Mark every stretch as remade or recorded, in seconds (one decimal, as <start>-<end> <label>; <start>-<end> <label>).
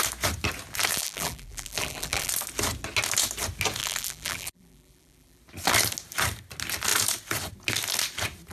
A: 0.0-0.9 recorded; 0.9-2.3 remade; 2.3-3.8 recorded; 3.8-5.4 remade; 5.4-8.5 recorded